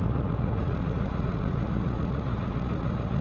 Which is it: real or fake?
fake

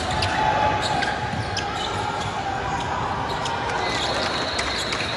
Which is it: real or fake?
real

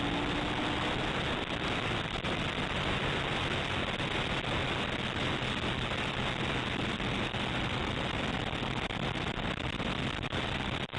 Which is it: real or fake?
real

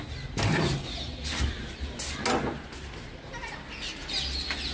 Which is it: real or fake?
real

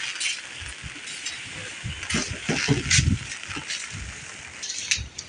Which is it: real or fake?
real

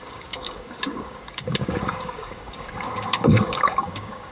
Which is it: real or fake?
fake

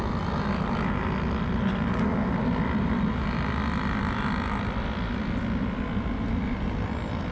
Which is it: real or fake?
real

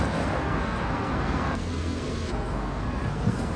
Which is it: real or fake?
fake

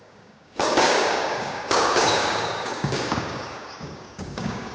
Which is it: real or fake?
fake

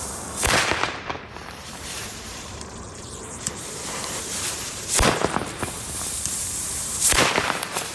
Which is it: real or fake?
fake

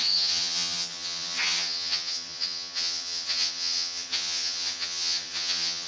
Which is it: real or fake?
fake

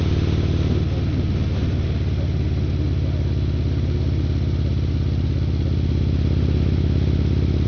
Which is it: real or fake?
real